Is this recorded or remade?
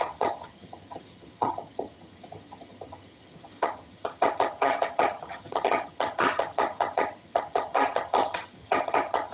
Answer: remade